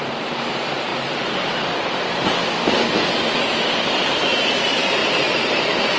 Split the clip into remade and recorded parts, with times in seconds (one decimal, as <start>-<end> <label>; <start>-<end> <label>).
0.0-2.4 remade; 2.4-3.5 recorded; 3.5-6.0 remade